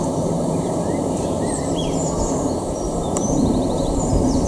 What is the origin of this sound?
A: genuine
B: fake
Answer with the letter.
B